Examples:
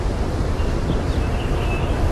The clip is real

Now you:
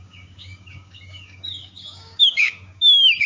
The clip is fake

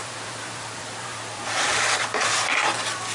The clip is fake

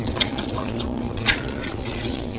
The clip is fake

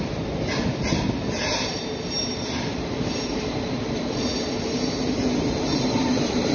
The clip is fake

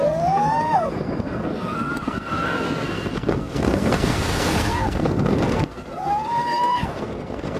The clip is fake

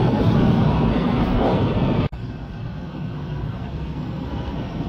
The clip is fake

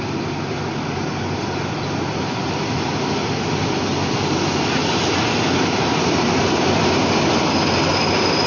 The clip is real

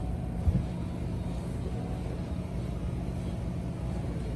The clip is real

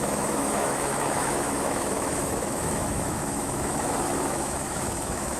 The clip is fake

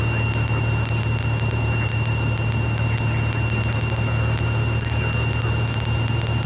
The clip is real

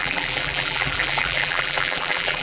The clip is fake